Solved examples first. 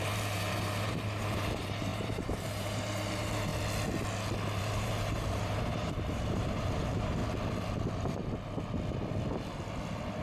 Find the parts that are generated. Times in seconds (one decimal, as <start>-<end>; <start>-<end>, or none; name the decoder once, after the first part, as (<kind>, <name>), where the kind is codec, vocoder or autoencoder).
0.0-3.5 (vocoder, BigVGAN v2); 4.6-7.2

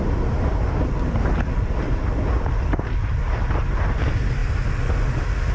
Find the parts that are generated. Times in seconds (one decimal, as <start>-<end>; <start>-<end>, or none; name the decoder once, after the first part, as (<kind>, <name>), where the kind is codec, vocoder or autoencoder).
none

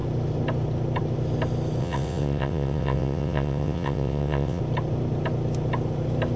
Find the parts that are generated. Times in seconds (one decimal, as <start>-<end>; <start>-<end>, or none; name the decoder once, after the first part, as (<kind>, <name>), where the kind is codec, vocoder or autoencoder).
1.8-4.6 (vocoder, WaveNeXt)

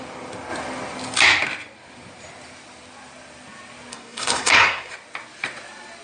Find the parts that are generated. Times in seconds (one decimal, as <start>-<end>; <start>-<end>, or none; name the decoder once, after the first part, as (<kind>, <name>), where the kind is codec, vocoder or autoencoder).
3.9-4.9 (codec, SNAC)

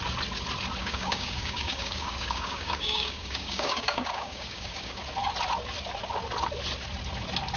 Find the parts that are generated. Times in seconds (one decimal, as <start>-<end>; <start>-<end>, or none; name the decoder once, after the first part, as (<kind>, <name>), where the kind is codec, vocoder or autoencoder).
0.8-5.0 (codec, DAC)

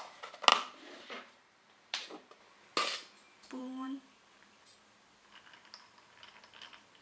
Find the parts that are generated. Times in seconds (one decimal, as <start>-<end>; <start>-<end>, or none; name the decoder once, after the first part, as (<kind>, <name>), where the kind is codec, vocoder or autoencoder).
0.5-2.4 (vocoder, BigVGAN v2); 3.2-4.6